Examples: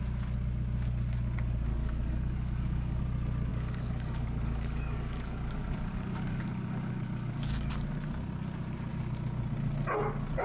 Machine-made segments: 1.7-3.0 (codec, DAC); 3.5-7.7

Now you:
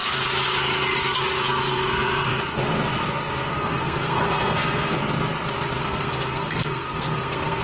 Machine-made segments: 1.7-2.3 (codec, SNAC); 3.5-4.9; 5.8-7.6